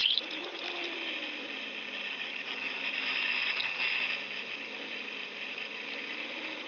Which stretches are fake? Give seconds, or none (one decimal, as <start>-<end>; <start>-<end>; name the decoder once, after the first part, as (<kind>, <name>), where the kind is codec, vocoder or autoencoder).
0.0-0.6 (vocoder, Vocos)